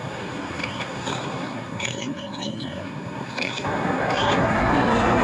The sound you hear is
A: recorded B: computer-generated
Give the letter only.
B